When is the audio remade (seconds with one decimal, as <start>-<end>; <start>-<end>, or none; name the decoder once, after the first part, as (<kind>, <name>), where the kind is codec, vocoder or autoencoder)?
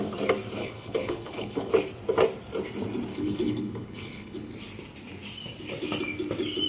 0.6-1.7 (codec, HILCodec); 3.1-4.5